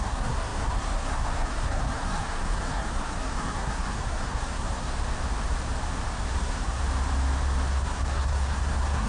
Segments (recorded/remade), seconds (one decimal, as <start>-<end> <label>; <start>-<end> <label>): 0.0-5.0 remade; 5.0-6.3 recorded; 6.3-6.8 remade; 6.8-7.7 recorded; 7.7-9.1 remade